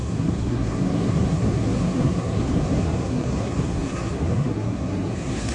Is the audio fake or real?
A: fake